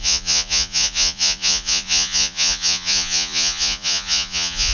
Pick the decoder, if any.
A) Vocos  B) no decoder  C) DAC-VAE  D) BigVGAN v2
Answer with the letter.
A